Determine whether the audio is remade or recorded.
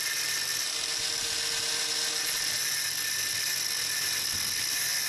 recorded